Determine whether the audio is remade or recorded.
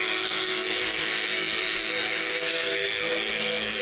remade